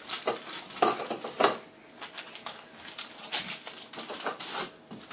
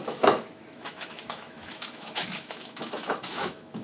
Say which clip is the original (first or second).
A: first